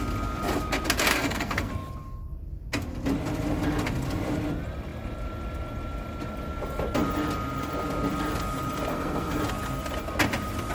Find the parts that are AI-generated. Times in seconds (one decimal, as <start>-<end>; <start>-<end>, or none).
1.1-1.7; 8.9-9.4

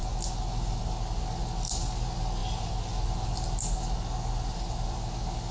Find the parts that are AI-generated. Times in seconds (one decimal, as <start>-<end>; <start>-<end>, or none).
none

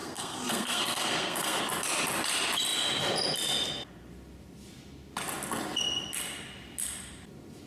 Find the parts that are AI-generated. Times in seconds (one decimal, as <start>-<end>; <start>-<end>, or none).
0.0-1.6

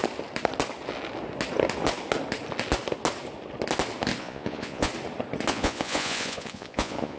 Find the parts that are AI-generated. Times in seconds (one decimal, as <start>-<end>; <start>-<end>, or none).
4.2-4.9; 5.5-7.2

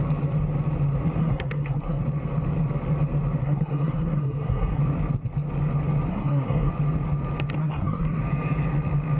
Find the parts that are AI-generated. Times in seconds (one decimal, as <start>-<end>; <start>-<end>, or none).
1.2-2.0; 3.4-4.8; 6.1-6.7; 7.6-8.2

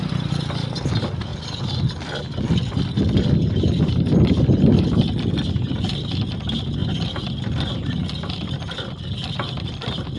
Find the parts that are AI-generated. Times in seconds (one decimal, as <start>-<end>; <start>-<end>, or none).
none